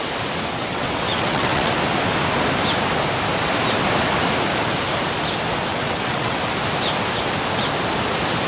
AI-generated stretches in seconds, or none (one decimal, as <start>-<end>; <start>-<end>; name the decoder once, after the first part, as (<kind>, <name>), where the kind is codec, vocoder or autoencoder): 0.5-1.7 (vocoder, WaveNeXt); 5.7-6.4